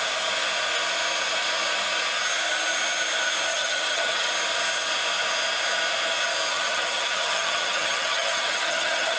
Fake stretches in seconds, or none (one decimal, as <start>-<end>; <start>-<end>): 3.5-4.3; 6.5-9.2